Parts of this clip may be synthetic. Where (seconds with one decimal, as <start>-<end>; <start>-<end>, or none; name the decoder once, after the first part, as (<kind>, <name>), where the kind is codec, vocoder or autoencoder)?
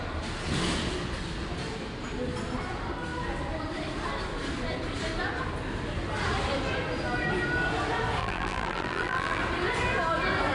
8.2-9.4 (vocoder, BigVGAN v2)